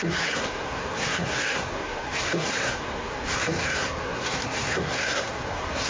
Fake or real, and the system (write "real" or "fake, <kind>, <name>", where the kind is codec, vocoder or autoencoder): fake, codec, SNAC